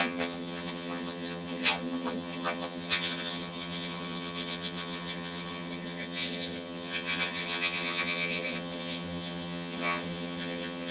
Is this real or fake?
fake